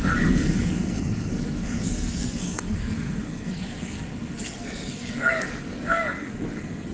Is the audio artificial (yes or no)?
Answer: yes